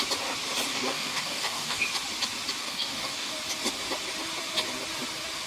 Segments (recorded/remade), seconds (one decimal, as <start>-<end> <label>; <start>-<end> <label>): 0.0-0.7 recorded; 0.7-1.8 remade; 1.8-2.6 recorded; 2.6-3.3 remade; 3.3-5.5 recorded